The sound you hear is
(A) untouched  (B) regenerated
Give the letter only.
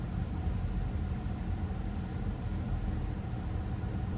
A